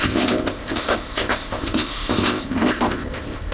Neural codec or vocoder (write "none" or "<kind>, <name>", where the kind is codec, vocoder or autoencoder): codec, ZipCodec